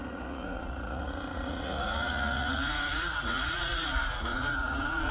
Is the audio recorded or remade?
remade